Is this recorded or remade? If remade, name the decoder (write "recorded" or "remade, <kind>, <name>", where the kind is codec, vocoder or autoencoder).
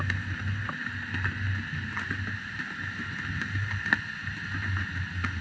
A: recorded